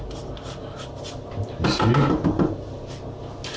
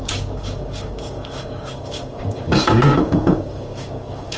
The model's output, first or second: second